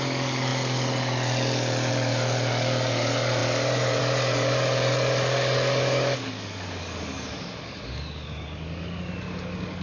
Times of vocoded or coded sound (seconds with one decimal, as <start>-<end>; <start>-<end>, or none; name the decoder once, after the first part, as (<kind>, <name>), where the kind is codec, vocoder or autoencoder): 0.0-9.8 (codec, DAC)

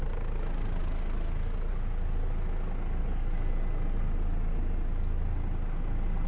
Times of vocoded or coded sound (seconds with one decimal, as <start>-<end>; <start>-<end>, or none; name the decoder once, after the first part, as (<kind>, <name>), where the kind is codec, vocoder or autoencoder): 3.0-3.5 (codec, DAC)

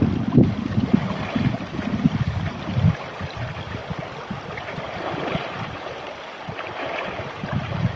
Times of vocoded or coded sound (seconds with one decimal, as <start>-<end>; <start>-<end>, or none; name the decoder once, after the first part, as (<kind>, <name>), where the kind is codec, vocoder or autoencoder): none

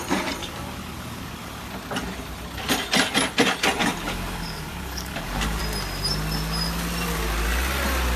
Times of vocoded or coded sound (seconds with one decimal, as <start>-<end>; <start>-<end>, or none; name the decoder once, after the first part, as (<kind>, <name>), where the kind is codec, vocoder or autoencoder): 0.4-1.7 (codec, DAC); 3.8-5.6

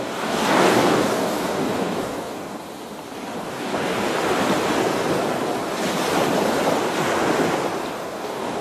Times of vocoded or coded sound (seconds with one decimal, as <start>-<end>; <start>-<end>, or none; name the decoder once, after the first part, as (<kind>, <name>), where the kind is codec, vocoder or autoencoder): 0.0-2.6 (codec, DAC); 3.4-4.1; 8.0-8.6

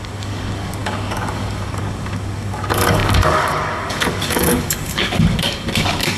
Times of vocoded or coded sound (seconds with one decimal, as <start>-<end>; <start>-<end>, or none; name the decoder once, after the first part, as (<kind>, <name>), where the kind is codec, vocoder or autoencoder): 0.0-6.2 (codec, DAC)

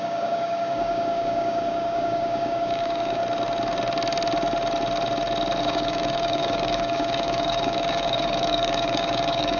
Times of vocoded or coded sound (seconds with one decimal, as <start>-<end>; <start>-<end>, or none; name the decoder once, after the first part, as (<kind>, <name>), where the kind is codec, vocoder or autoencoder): 0.0-3.2 (codec, DAC); 5.6-9.6